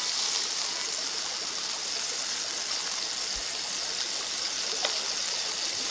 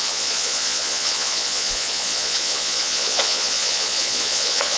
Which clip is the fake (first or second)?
second